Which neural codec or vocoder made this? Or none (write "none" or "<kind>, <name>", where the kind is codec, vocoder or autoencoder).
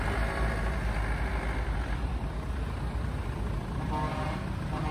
none